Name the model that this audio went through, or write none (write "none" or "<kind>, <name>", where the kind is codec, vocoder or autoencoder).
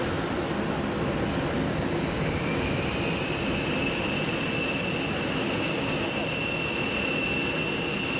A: none